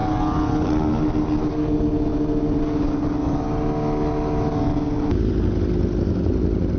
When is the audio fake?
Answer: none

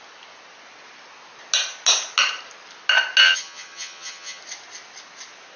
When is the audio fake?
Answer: 3.2-4.4 (vocoder, HiFi-GAN)

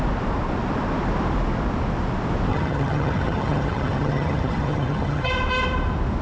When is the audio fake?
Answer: 2.5-5.3 (vocoder, HiFi-GAN)

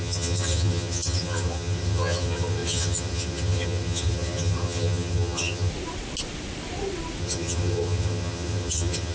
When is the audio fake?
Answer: 0.0-5.7 (vocoder, HiFi-GAN); 7.2-9.1

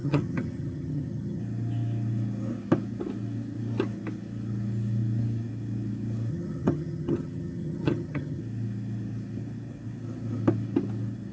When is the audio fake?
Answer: 0.0-1.4 (vocoder, HiFi-GAN); 6.3-8.4